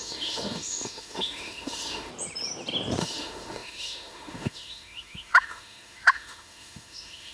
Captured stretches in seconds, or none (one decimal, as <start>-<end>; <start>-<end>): 2.1-3.0